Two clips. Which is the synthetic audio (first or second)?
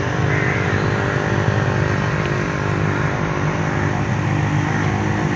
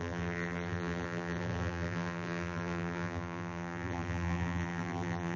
second